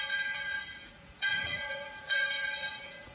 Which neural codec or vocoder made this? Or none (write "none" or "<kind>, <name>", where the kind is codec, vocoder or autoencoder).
vocoder, Vocos